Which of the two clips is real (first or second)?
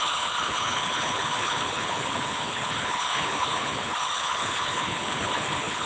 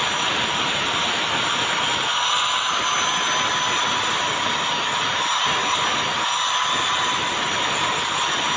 second